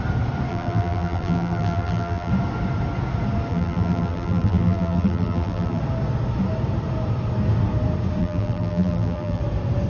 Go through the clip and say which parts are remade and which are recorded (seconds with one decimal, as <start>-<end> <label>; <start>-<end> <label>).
0.0-0.5 recorded; 0.5-2.3 remade; 2.3-3.5 recorded; 3.5-5.8 remade; 5.8-8.2 recorded; 8.2-9.4 remade; 9.4-9.9 recorded